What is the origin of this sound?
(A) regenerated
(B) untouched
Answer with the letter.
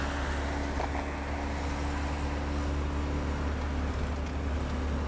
B